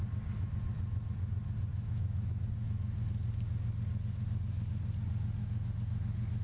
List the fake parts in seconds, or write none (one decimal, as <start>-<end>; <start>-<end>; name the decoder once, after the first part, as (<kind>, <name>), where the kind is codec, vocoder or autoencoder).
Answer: 1.7-2.4 (autoencoder, DAC-VAE)